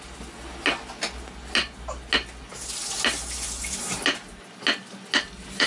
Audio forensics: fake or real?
real